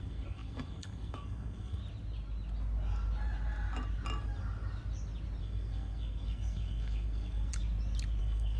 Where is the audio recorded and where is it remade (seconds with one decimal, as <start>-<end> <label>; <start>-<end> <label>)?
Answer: 0.0-1.8 remade; 1.8-5.4 recorded; 5.4-7.5 remade; 7.5-8.2 recorded; 8.2-8.6 remade